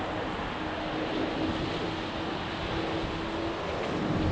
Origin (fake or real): real